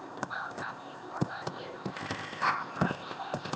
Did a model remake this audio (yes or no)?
yes